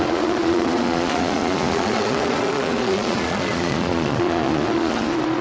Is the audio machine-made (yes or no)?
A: yes